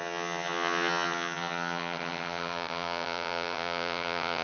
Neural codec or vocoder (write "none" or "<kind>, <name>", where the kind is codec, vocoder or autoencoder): vocoder, HiFi-GAN